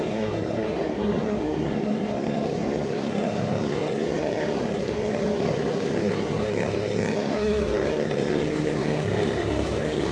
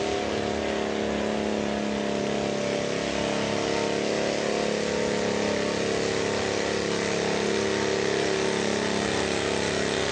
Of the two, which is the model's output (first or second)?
first